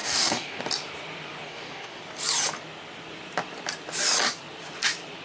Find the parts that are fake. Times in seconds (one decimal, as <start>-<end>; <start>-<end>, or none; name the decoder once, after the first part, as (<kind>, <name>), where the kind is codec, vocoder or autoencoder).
0.0-0.6 (codec, DAC); 1.4-2.0